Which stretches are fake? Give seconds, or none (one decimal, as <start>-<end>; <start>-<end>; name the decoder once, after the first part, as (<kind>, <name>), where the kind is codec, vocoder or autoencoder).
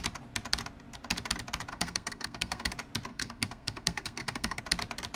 1.7-2.7 (codec, SNAC); 3.1-4.6